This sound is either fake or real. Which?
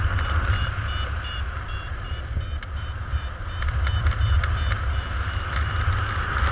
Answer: fake